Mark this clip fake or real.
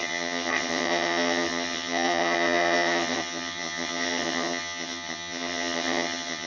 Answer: fake